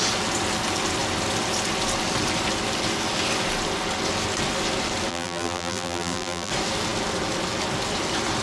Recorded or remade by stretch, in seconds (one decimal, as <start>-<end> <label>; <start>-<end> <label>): 0.0-5.1 recorded; 5.1-6.5 remade; 6.5-8.4 recorded